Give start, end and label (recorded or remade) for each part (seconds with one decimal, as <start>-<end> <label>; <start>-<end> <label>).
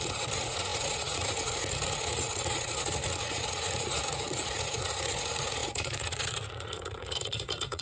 0.0-7.8 remade